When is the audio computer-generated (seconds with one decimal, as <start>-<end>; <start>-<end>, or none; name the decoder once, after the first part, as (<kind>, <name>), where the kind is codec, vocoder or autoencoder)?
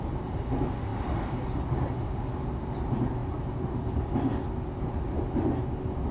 none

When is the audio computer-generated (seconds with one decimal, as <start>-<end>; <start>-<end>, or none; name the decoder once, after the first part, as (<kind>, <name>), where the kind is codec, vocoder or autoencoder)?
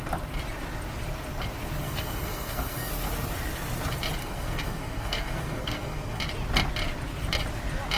1.8-2.9 (codec, SNAC); 4.2-6.2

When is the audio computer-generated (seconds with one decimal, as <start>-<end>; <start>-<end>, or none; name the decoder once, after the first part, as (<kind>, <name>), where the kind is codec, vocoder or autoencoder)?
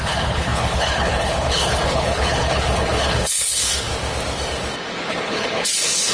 0.0-3.9 (codec, HILCodec); 5.1-6.1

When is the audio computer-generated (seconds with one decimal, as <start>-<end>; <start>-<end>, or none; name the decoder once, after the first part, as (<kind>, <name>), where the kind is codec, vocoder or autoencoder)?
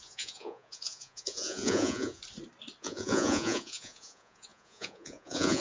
0.0-2.2 (vocoder, Vocos); 2.8-5.6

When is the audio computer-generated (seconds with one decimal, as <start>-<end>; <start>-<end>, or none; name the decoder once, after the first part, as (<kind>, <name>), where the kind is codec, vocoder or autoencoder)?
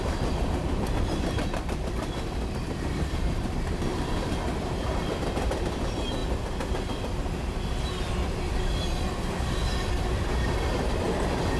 0.0-3.9 (vocoder, BigVGAN v2); 4.6-6.2; 8.1-11.6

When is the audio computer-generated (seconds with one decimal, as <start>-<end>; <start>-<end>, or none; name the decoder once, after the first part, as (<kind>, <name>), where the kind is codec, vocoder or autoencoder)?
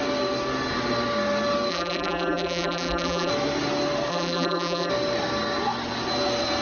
1.7-3.3 (vocoder, BigVGAN v2); 4.1-4.9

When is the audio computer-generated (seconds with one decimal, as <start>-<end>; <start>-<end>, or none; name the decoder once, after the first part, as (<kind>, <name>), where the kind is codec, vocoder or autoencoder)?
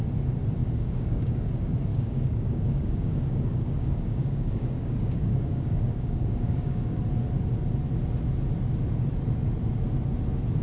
0.6-1.5 (codec, DAC); 1.9-7.0